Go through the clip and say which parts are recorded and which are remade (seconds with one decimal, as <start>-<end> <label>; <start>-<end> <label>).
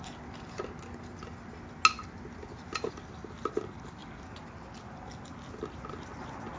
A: 0.0-6.6 recorded